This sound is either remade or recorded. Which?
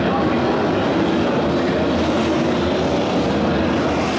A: recorded